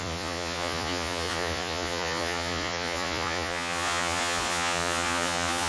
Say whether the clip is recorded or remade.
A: remade